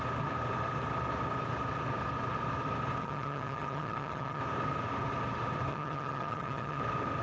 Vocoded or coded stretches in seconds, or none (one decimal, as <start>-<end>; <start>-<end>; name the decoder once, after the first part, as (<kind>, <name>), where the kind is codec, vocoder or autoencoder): 3.0-4.4 (vocoder, HiFi-GAN); 5.7-6.8